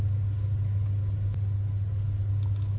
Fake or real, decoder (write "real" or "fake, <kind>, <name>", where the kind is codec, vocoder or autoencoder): real